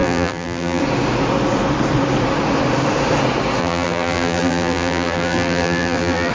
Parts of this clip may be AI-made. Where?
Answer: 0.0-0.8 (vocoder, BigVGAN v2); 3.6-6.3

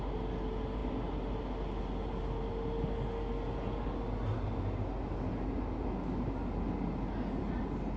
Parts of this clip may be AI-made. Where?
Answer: none

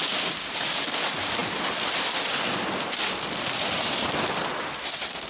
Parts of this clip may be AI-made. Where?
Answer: none